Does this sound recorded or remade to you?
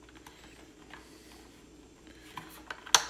recorded